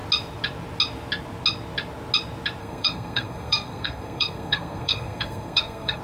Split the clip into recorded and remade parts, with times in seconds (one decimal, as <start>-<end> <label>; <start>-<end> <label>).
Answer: 0.0-2.6 recorded; 2.6-6.0 remade